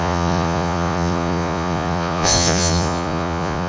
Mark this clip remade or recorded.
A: remade